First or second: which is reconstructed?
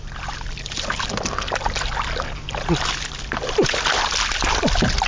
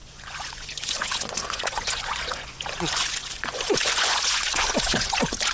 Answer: second